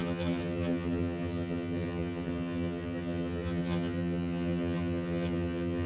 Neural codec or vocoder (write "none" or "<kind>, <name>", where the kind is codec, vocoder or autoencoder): vocoder, HiFi-GAN